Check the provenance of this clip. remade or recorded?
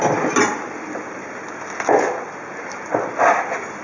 recorded